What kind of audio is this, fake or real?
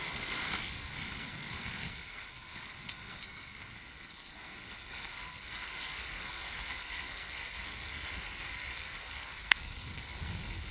fake